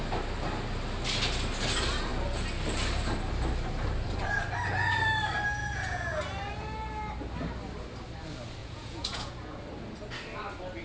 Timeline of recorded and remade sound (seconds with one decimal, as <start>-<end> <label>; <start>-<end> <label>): 0.0-5.6 recorded; 5.6-6.2 remade; 6.2-8.6 recorded; 8.6-9.6 remade; 9.6-10.8 recorded